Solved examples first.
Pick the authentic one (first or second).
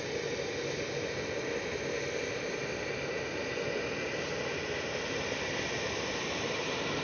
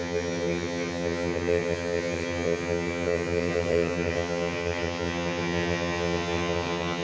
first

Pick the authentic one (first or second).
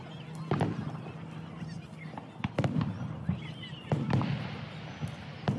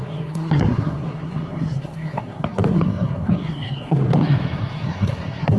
first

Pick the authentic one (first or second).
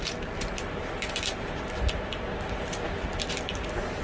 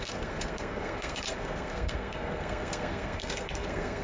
first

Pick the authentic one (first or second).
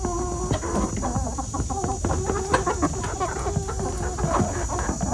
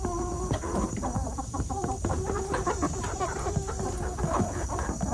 first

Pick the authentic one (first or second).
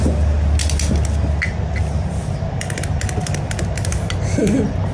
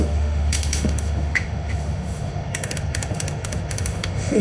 first